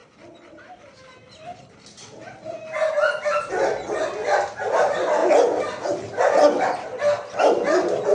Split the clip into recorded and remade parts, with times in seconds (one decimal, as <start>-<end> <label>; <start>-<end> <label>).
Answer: 0.0-8.1 recorded